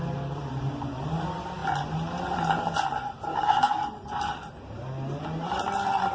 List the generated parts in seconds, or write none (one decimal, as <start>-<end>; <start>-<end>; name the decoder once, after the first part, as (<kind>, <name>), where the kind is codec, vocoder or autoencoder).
3.3-3.8 (codec, DAC)